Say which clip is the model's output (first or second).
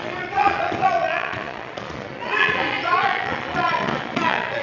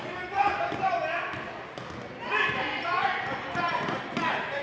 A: first